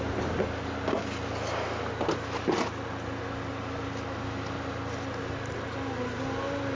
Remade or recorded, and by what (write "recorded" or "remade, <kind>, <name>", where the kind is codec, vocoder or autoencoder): recorded